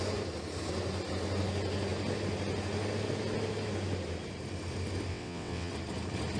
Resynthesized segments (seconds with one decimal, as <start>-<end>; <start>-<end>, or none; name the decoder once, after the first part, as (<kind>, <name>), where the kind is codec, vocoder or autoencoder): 5.1-5.7 (vocoder, WaveNeXt)